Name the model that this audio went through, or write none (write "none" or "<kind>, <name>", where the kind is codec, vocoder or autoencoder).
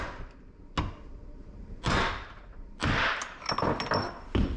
none